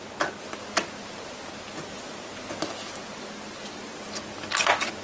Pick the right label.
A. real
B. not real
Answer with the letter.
A